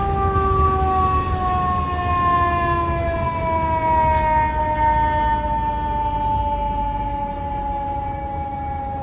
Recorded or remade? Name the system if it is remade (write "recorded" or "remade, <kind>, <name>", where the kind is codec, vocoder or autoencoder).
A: recorded